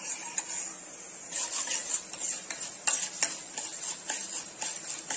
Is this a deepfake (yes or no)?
no